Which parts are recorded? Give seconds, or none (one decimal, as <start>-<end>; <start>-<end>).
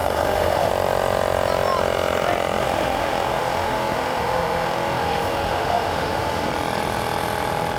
0.7-2.6; 6.5-7.8